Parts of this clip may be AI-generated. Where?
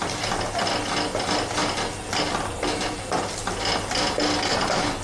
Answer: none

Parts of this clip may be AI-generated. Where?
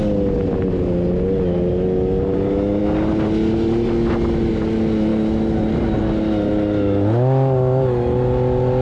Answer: none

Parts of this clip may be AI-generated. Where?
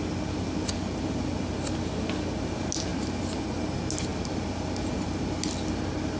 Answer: none